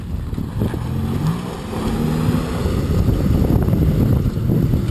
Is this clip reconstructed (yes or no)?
no